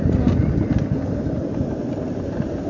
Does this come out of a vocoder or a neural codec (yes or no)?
no